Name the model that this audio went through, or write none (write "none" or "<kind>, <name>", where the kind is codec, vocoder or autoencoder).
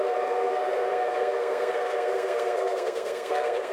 codec, SNAC